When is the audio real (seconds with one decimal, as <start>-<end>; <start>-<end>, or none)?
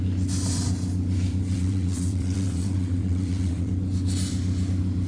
0.0-1.5; 3.7-5.1